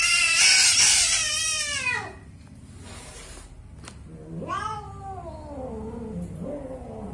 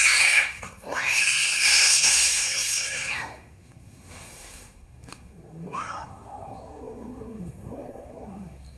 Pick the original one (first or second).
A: first